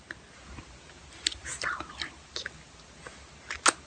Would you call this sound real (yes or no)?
yes